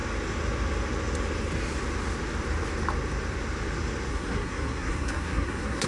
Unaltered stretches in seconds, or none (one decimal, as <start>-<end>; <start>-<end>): 0.0-4.1

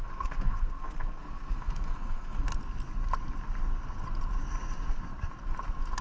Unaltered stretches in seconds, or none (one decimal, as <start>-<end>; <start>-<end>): 2.5-6.0

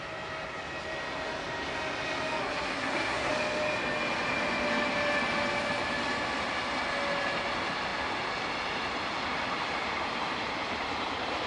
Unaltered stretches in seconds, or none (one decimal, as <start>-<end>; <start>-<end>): 0.0-2.4; 3.3-11.5

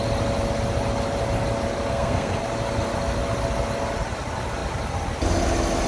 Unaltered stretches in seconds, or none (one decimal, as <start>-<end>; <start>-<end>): 0.0-1.9; 2.4-5.9

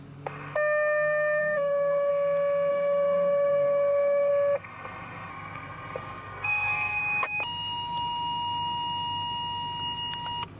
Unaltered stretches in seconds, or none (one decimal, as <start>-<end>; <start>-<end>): 0.0-1.4; 2.1-2.7; 4.3-5.3; 7.0-10.6

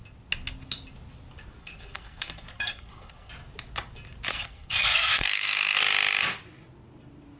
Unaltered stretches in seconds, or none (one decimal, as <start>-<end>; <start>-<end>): 0.0-1.6; 3.3-4.3; 5.8-7.4

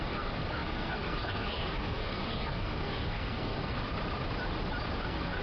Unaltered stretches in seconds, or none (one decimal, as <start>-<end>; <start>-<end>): 3.8-5.0

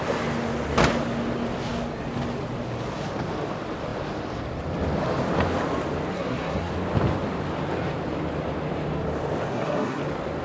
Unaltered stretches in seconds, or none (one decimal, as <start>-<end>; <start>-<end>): 0.0-6.1; 6.7-9.5; 10.0-10.4